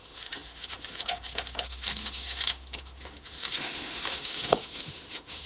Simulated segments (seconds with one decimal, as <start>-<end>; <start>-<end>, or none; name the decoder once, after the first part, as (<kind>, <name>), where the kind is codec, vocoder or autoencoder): 0.0-5.5 (autoencoder, DAC-VAE)

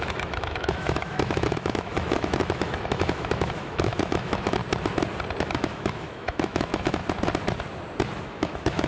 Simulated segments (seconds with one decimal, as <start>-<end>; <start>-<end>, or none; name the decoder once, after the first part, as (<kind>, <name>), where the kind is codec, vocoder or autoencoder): 0.0-4.6 (autoencoder, DAC-VAE); 5.4-7.0; 8.2-8.9

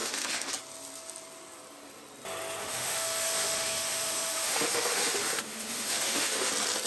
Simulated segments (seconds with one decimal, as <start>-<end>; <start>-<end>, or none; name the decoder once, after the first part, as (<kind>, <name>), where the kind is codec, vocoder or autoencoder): 0.0-0.5 (autoencoder, DAC-VAE); 2.6-6.5

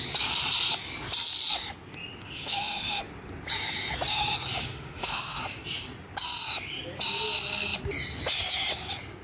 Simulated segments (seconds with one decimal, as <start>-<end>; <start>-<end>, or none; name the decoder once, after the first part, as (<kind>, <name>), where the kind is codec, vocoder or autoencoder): 2.2-3.0 (autoencoder, DAC-VAE); 4.6-5.4

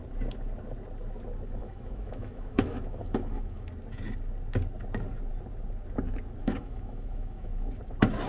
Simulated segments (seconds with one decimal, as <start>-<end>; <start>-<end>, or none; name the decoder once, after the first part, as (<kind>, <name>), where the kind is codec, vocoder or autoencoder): 1.6-3.7 (autoencoder, DAC-VAE); 6.4-7.7